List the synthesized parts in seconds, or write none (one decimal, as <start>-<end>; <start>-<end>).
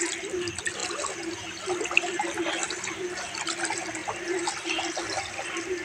none